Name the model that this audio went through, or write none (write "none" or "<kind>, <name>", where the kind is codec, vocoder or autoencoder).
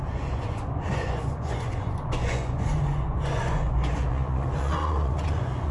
vocoder, Vocos